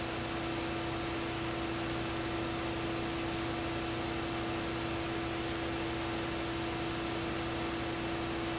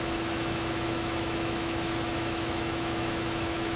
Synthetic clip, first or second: second